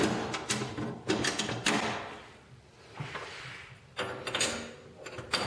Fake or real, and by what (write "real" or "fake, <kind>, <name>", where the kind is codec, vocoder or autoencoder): real